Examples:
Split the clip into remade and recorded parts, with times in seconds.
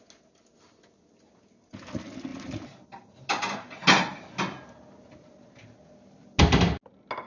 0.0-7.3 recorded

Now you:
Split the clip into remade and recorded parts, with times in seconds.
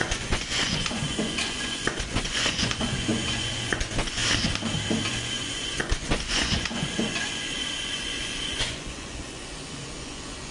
0.0-4.2 remade; 4.2-5.1 recorded; 5.1-10.5 remade